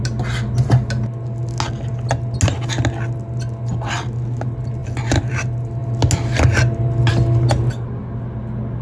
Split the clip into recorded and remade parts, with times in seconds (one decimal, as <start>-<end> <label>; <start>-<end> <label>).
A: 0.0-4.8 recorded; 4.8-5.3 remade; 5.3-8.8 recorded